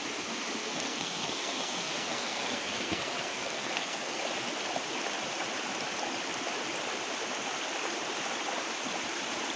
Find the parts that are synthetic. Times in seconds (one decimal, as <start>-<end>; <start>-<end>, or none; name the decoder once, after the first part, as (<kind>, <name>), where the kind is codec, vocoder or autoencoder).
0.6-4.2 (codec, SNAC)